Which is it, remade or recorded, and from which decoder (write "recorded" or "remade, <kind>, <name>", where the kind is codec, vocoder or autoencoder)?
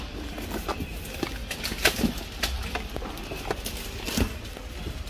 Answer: remade, vocoder, BigVGAN v2